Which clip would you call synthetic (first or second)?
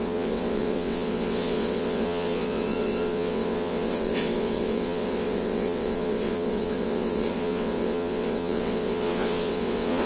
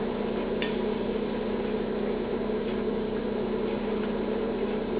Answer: first